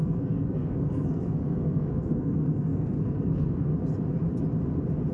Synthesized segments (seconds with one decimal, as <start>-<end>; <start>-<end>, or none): 0.0-3.7

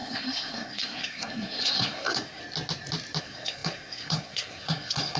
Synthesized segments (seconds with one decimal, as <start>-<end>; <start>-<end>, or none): 0.0-2.4; 3.2-5.2

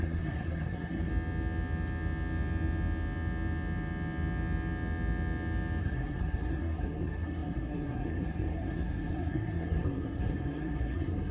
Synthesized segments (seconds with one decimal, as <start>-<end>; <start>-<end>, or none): 0.0-1.1; 5.8-11.3

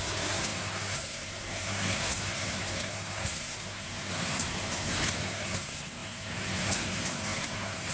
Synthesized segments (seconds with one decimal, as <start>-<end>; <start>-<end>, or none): 0.0-7.9

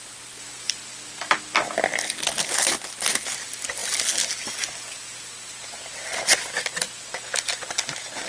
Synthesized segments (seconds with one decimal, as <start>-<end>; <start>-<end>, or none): none

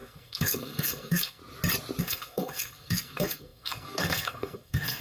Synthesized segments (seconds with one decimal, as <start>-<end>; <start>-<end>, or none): 0.0-1.4; 2.0-5.0

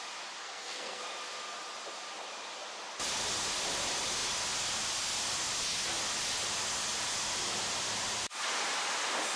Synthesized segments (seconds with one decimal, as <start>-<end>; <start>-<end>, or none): 0.4-1.0

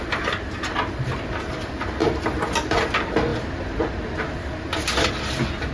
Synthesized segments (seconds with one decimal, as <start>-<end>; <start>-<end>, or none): none